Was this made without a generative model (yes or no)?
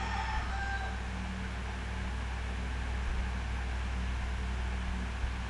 yes